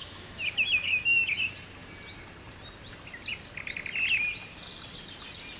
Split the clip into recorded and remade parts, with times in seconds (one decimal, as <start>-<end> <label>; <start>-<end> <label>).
0.0-1.4 remade; 1.4-5.6 recorded